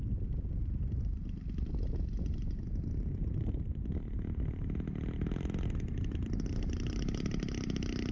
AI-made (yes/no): no